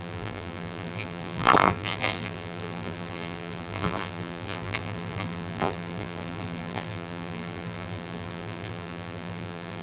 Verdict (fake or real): fake